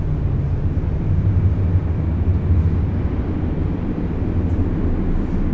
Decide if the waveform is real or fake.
real